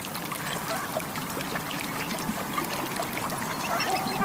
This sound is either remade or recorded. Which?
recorded